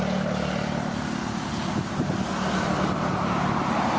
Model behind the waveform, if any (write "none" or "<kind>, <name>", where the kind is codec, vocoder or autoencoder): none